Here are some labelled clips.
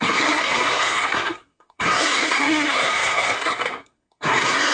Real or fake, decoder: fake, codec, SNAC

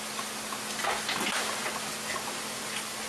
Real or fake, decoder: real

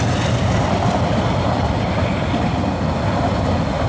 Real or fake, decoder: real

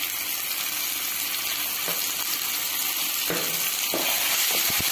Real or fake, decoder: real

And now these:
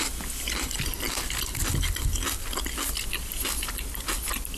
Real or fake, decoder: real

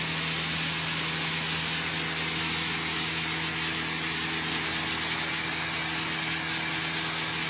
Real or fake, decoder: real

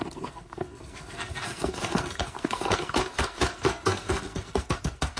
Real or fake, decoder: fake, codec, SNAC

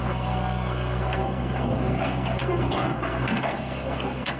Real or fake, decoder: fake, codec, SNAC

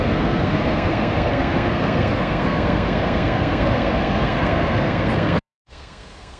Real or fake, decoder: fake, codec, SNAC